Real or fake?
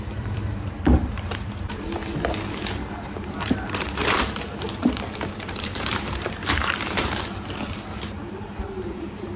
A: fake